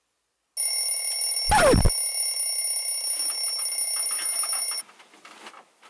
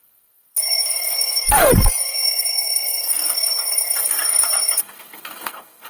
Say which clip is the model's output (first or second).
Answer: second